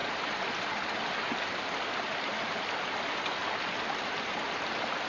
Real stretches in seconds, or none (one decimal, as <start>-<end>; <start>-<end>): 0.0-5.1